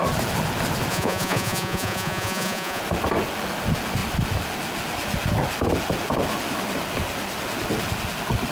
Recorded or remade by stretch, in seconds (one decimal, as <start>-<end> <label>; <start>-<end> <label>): 0.0-0.9 recorded; 0.9-2.8 remade; 2.8-8.5 recorded

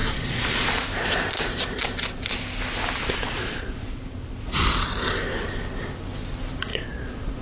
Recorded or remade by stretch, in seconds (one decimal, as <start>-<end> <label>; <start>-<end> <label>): 0.0-0.7 remade; 0.7-3.0 recorded; 3.0-4.6 remade; 4.6-6.7 recorded; 6.7-7.4 remade

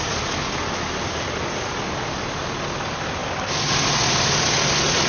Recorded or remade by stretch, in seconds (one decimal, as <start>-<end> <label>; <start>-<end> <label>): 0.0-5.1 recorded

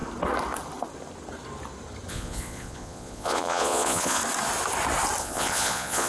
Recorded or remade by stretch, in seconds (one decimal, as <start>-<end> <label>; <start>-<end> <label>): 0.0-2.1 recorded; 2.1-4.2 remade; 4.2-5.2 recorded; 5.2-6.1 remade

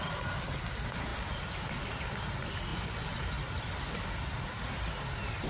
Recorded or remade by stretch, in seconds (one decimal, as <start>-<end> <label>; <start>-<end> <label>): 0.0-2.7 recorded; 2.7-3.2 remade; 3.2-5.5 recorded

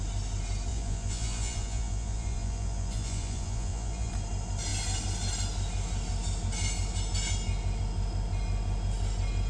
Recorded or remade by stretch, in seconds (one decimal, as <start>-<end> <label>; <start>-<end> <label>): 0.0-0.7 recorded; 0.7-4.1 remade; 4.1-9.5 recorded

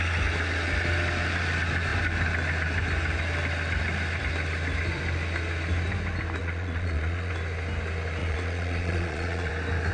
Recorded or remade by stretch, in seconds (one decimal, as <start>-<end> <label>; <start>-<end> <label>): 0.0-6.4 recorded; 6.4-7.3 remade; 7.3-8.2 recorded; 8.2-9.5 remade; 9.5-9.9 recorded

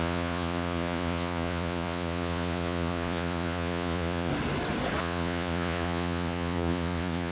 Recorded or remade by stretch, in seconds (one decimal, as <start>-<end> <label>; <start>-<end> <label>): 0.0-4.3 remade; 4.3-5.0 recorded; 5.0-7.3 remade